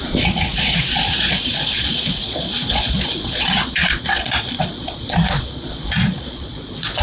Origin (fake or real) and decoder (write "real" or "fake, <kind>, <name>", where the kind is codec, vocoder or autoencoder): fake, vocoder, Vocos